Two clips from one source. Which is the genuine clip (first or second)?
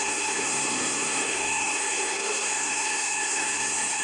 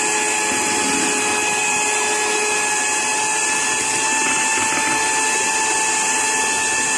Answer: second